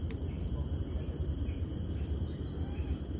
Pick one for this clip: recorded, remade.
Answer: remade